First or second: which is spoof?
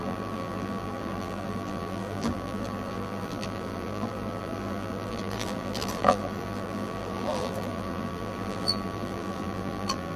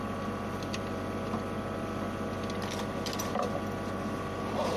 first